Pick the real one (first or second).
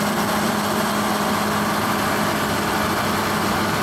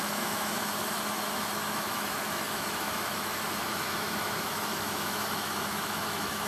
first